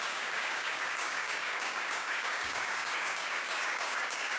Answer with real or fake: fake